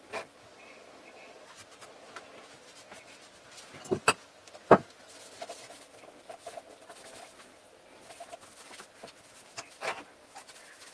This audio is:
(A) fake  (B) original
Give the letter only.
B